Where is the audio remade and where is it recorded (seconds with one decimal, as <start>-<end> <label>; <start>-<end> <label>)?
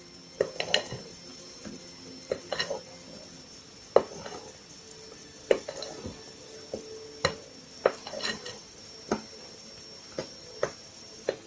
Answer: 0.0-11.5 recorded